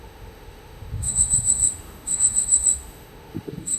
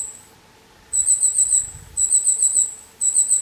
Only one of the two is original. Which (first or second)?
second